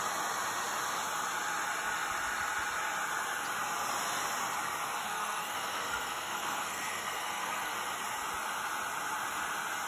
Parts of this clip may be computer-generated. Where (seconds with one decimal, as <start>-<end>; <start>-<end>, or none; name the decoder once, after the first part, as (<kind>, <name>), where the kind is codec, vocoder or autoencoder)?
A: 5.0-7.7 (codec, SNAC)